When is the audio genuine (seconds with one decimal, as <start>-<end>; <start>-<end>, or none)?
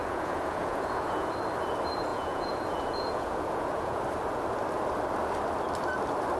1.3-2.1; 4.0-6.4